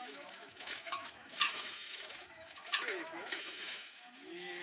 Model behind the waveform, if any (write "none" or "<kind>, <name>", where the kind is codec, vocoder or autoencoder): autoencoder, DAC-VAE